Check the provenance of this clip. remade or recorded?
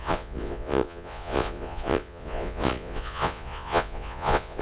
remade